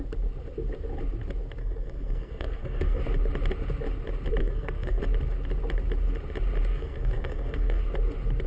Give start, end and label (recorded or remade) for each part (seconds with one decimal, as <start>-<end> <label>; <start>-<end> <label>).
0.0-1.6 recorded; 1.6-3.0 remade; 3.0-4.4 recorded; 4.4-5.0 remade; 5.0-6.7 recorded; 6.7-7.8 remade; 7.8-8.5 recorded